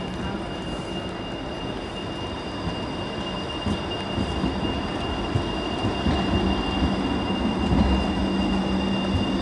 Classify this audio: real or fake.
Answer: real